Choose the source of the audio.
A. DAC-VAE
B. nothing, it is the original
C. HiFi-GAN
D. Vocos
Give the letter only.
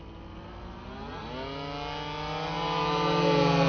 B